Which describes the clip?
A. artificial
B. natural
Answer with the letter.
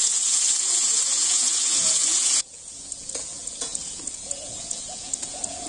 A